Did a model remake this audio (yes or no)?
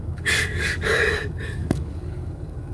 yes